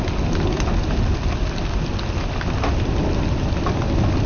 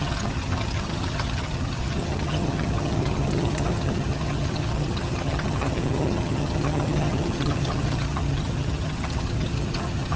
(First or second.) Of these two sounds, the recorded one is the first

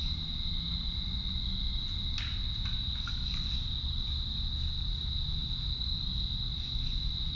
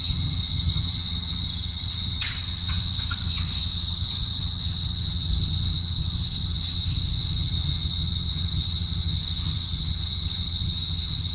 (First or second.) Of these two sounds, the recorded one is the first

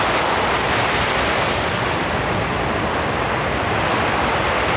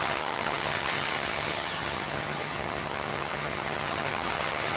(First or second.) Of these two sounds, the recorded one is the first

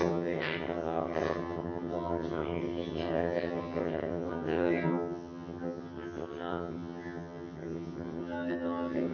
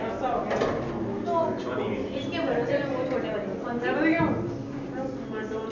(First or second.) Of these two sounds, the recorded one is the second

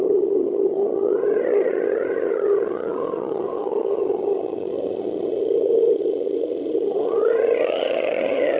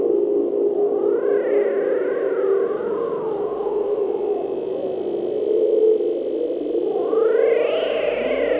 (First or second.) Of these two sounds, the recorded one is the second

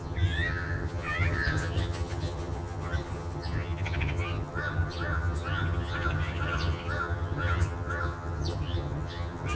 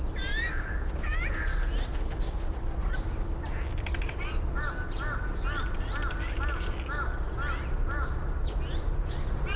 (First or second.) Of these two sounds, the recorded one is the second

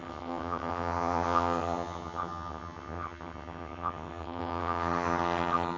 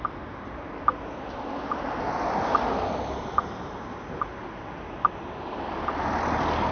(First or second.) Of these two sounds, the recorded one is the second